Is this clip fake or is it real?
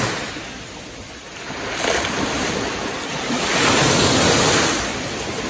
real